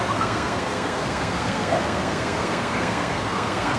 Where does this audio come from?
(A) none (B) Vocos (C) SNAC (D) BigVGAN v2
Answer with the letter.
C